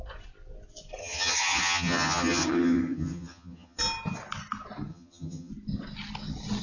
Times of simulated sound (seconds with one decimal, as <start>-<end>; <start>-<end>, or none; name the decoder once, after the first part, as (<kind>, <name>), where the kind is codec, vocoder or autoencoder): 1.0-3.8 (vocoder, HiFi-GAN); 4.9-5.5